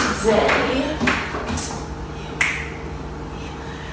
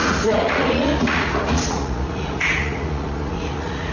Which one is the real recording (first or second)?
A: first